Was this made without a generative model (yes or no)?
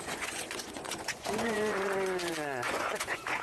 no